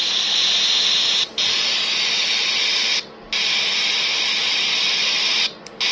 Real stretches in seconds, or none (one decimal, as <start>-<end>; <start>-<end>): 0.0-4.4; 5.3-5.9